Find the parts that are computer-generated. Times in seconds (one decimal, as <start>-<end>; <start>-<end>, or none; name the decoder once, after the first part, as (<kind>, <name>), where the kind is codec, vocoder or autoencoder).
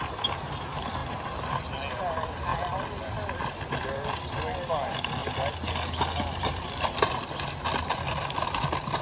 none